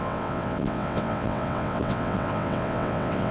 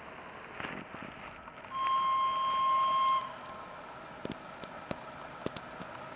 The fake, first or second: first